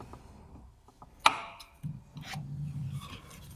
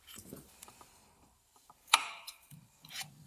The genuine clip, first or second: first